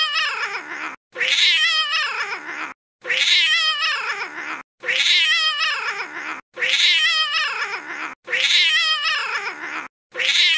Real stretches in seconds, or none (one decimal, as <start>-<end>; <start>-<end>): 0.0-10.6